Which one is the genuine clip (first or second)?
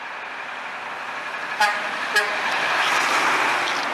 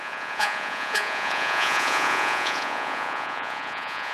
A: first